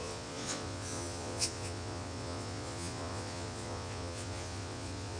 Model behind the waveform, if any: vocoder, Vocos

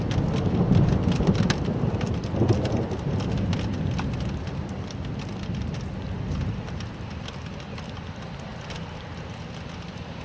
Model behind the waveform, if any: none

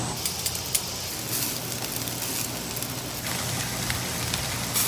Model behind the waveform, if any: none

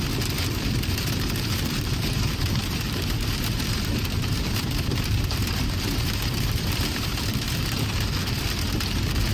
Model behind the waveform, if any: vocoder, BigVGAN v2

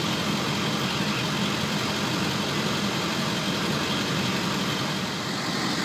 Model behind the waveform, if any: none